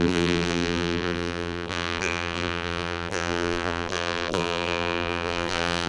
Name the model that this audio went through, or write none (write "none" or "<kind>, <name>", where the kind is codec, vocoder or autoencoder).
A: vocoder, BigVGAN v2